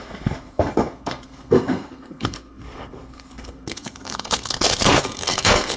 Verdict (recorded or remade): remade